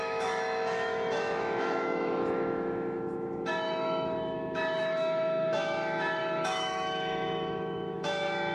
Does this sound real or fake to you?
fake